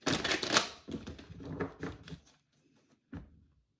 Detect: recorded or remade recorded